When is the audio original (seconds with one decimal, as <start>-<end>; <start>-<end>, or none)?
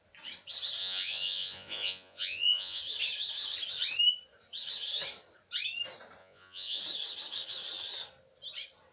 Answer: 0.0-0.8; 2.8-6.2; 6.8-8.9